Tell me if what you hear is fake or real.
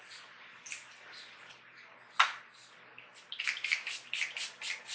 real